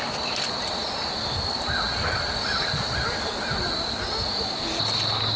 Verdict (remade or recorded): recorded